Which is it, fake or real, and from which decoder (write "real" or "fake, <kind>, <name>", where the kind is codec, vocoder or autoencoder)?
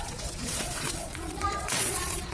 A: fake, vocoder, Vocos